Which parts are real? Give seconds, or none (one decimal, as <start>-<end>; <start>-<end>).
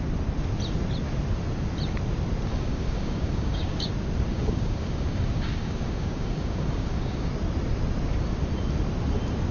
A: 0.0-2.5; 3.9-4.3; 7.3-9.5